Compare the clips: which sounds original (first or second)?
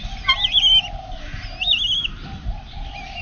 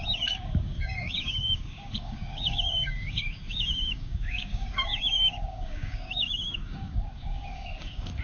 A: first